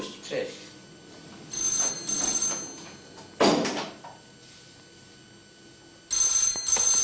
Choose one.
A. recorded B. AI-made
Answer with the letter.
A